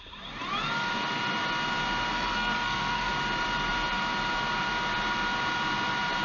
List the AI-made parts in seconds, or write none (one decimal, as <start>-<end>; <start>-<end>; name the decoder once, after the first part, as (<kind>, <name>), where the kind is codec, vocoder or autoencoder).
2.1-3.1 (codec, SNAC)